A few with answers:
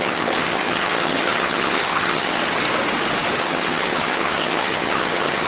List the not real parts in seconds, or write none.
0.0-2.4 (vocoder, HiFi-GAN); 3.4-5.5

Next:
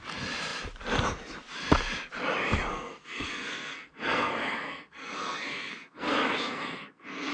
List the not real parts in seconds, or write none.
2.7-7.3 (codec, SNAC)

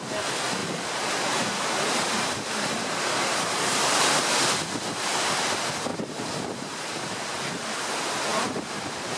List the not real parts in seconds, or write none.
0.6-4.0 (vocoder, BigVGAN v2); 5.9-7.4; 8.3-9.2

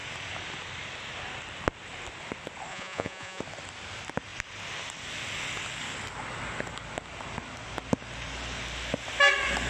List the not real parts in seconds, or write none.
2.7-3.4 (vocoder, Vocos)

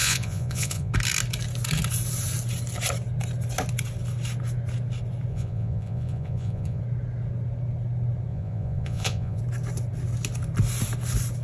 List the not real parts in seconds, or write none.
0.0-0.9 (vocoder, Vocos); 5.3-6.8; 8.3-9.4

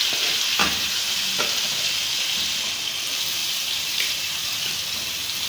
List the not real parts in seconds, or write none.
0.6-1.4 (vocoder, BigVGAN v2); 3.4-4.5

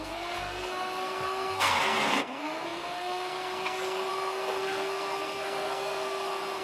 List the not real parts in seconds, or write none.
0.0-6.6 (codec, SNAC)